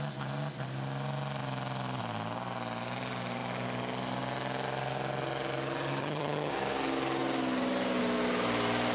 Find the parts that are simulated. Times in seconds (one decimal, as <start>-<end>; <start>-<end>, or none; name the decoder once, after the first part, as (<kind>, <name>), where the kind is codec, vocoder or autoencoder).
6.0-6.5 (vocoder, HiFi-GAN)